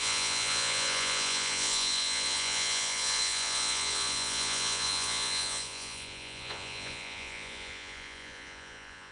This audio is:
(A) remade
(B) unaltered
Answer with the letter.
A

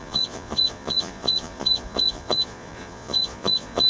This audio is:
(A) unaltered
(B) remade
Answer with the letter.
B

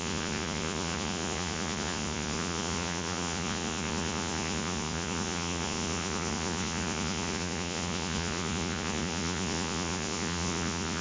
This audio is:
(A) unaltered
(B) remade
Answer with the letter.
B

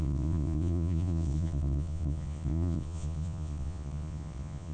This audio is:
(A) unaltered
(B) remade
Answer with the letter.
B